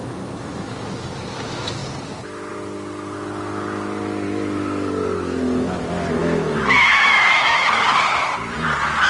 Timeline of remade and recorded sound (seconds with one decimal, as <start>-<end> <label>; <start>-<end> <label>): 0.0-0.7 remade; 0.7-6.2 recorded; 6.2-7.6 remade; 7.6-9.1 recorded